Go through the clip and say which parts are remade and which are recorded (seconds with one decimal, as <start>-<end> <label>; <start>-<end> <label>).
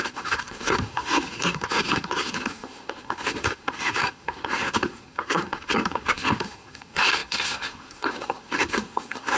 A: 0.0-9.4 remade